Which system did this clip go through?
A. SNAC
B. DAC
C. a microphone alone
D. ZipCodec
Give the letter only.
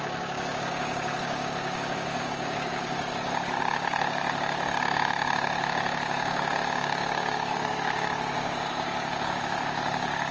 B